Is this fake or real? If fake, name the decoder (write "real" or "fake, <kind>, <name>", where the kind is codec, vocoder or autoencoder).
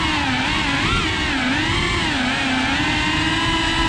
real